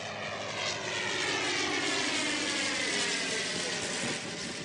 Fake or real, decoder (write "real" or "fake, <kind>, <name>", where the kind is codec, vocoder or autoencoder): real